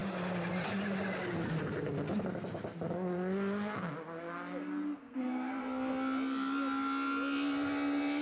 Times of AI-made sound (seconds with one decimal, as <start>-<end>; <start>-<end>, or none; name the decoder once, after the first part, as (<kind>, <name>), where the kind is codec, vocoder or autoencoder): 5.0-5.5 (codec, SNAC)